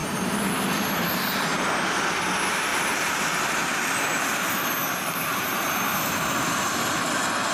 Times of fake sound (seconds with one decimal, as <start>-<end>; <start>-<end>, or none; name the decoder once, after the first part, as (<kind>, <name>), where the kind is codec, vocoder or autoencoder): 0.0-1.5 (vocoder, BigVGAN v2); 2.7-4.1; 4.8-7.1